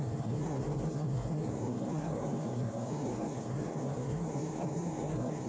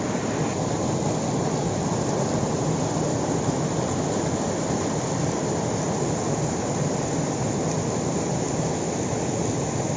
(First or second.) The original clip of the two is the second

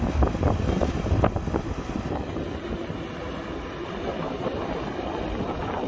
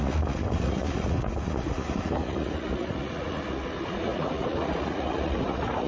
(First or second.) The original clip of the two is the first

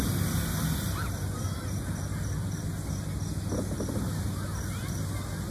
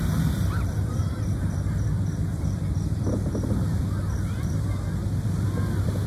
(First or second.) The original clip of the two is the first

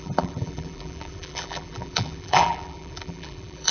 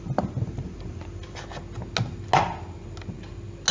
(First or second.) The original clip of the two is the second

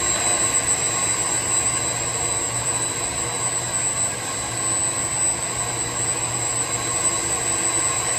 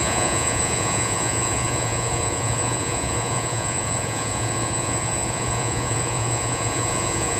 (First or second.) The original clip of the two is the first